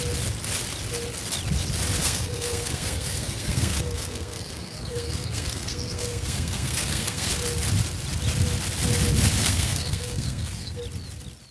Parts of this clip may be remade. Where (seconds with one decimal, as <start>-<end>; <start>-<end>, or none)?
2.0-7.3; 9.4-10.8